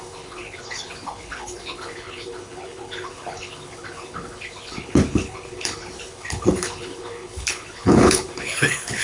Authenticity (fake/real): fake